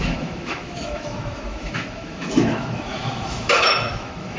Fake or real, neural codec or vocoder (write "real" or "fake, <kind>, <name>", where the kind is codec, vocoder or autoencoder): fake, autoencoder, DAC-VAE